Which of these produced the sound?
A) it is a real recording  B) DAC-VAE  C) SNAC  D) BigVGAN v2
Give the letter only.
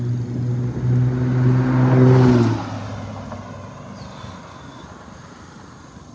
A